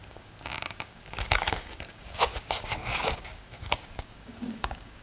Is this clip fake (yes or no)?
yes